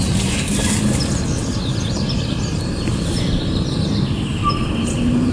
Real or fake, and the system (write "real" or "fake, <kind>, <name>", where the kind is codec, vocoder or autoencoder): real